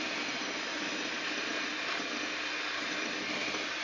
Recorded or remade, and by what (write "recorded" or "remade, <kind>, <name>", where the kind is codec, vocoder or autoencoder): recorded